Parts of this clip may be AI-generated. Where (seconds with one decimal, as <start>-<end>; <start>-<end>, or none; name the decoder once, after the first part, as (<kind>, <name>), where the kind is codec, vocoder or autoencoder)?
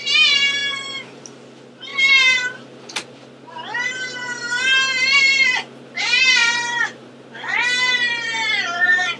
6.4-7.1 (vocoder, BigVGAN v2)